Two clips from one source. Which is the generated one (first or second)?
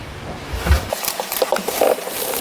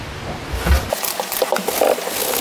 first